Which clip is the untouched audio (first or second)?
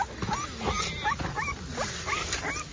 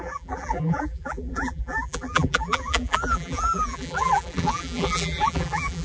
first